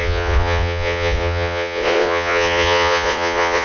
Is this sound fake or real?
fake